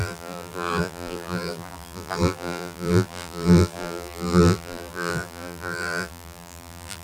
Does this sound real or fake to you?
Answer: fake